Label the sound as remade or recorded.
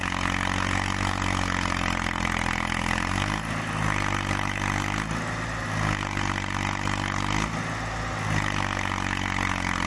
recorded